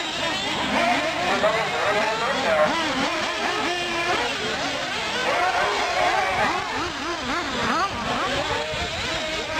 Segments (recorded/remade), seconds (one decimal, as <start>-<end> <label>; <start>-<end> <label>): 0.0-9.6 recorded